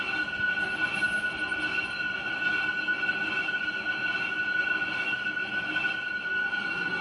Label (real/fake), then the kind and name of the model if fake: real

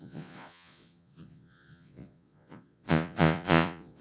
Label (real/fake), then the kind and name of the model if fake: fake, vocoder, Vocos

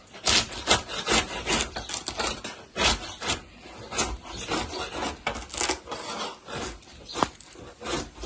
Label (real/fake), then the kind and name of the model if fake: real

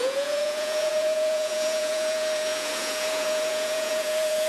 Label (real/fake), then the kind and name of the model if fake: fake, vocoder, Vocos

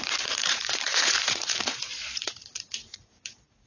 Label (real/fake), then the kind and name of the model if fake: fake, vocoder, Vocos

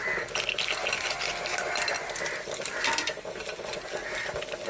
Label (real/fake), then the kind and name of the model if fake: real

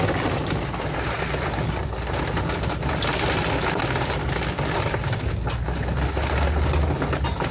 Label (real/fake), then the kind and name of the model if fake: real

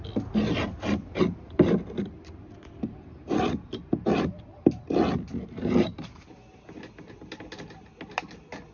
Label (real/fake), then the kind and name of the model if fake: real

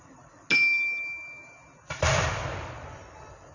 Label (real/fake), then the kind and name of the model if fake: real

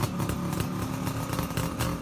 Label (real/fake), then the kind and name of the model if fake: real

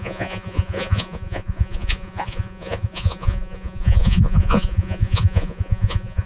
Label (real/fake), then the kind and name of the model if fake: fake, vocoder, Vocos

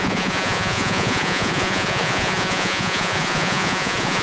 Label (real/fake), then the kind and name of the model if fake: fake, vocoder, Vocos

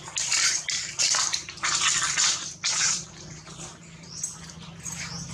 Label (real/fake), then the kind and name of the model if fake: real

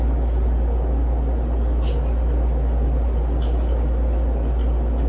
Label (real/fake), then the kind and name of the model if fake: real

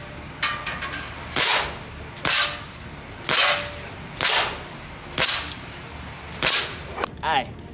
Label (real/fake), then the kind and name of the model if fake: real